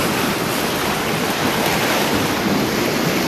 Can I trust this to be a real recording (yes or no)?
yes